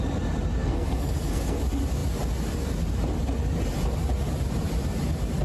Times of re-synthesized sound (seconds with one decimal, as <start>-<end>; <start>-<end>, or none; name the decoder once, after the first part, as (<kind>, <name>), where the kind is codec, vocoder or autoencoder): 0.6-1.6 (codec, SNAC)